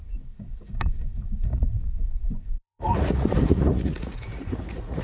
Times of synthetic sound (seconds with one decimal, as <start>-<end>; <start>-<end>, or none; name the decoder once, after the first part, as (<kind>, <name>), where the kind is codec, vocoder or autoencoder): 0.0-5.0 (vocoder, Vocos)